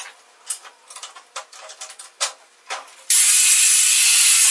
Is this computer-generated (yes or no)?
no